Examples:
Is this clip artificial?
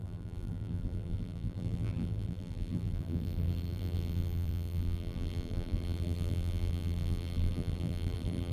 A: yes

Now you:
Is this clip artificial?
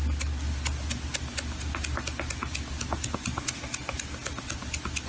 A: no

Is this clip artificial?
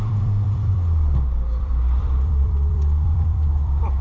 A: yes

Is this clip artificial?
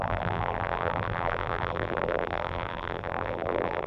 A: yes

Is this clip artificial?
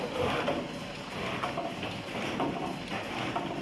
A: no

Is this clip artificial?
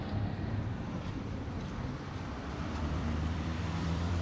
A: yes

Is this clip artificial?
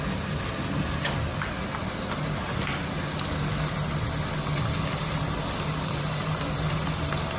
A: no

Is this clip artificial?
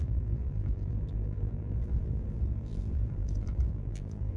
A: yes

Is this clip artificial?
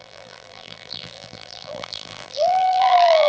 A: yes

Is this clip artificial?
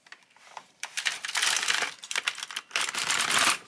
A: yes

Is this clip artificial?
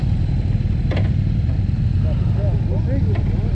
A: no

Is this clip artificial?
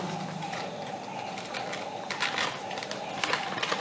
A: no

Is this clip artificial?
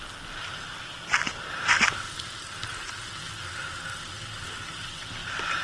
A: no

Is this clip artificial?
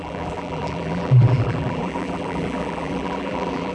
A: yes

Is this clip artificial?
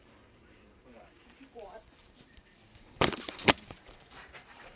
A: yes